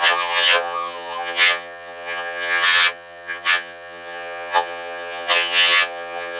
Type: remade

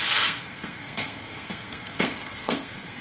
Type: remade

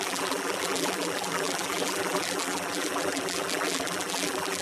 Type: remade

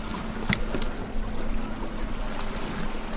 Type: recorded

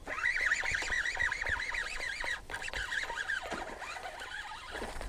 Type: recorded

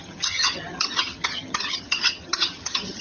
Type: remade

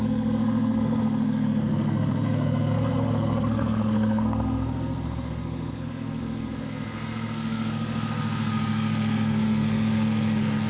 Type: remade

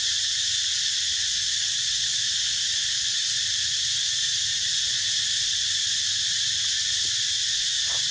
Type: remade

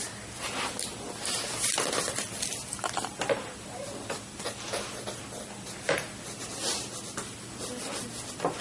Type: recorded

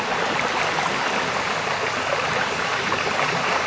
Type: recorded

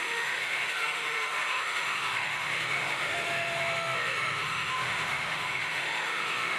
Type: remade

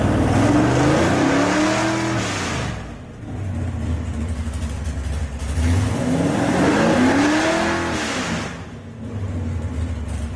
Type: recorded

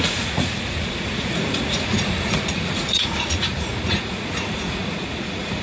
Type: remade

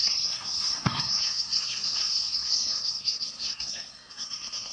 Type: remade